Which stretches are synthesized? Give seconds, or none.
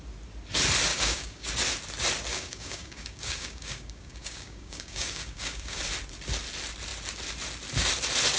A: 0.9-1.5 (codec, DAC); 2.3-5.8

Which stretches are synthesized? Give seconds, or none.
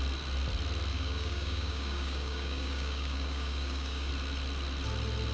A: 0.9-4.1 (codec, DAC)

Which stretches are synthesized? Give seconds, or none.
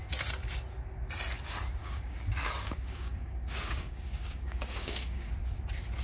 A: 1.8-5.3 (codec, DAC)